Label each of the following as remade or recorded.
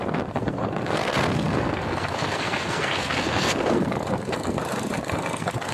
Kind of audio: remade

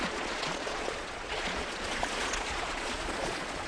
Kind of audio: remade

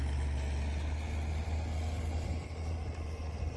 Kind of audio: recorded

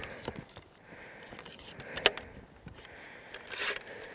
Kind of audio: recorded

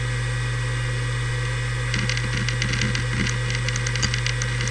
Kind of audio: recorded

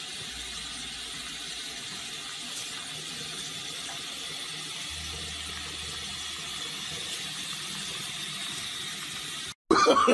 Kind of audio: recorded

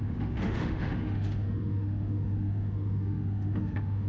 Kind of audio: remade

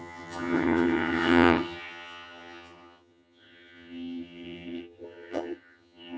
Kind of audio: remade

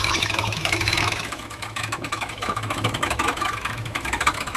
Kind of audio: remade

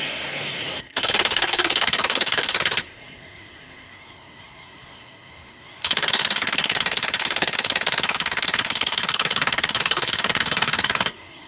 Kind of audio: remade